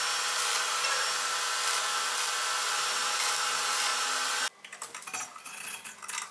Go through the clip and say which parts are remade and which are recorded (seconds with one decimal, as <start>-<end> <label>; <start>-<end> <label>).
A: 0.0-6.3 recorded